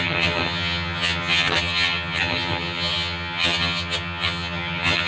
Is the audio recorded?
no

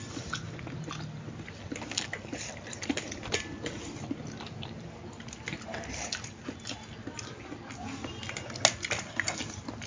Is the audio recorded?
yes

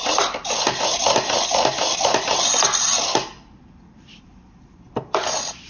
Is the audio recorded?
yes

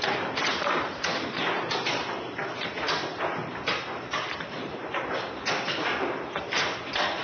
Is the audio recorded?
yes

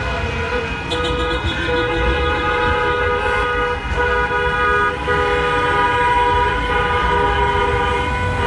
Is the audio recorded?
yes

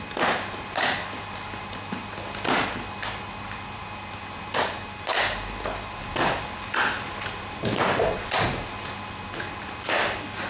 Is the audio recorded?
yes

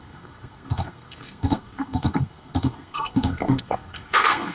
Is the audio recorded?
no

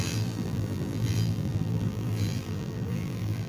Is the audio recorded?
no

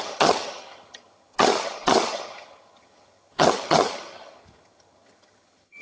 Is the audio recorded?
no